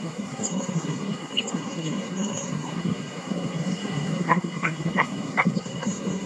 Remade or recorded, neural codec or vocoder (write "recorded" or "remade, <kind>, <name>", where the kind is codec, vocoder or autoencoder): remade, codec, SNAC